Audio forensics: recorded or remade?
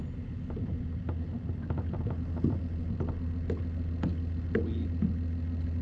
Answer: recorded